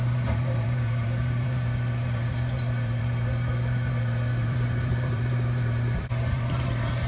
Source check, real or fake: fake